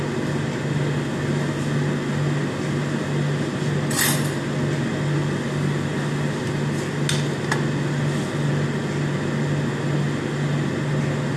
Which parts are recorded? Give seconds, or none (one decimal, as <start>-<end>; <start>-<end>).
0.0-11.4